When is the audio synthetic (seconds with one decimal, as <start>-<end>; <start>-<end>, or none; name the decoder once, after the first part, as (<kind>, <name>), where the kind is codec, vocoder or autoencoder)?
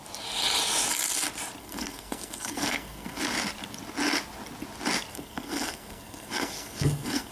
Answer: 1.6-3.2 (codec, SNAC); 5.1-7.3